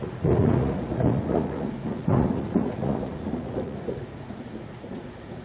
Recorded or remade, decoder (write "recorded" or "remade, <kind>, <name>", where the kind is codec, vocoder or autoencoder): remade, vocoder, Vocos